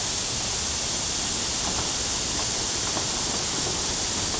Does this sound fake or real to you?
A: real